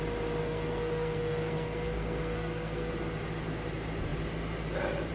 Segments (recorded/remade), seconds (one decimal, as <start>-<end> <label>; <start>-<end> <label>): 0.0-0.4 recorded; 0.4-2.9 remade; 2.9-5.1 recorded